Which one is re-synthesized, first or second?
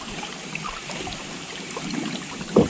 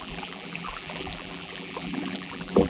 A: second